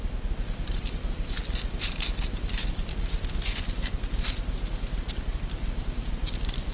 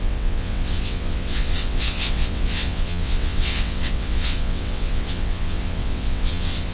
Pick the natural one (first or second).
first